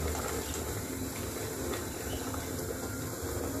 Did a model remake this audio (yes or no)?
no